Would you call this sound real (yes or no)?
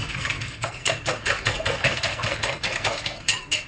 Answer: no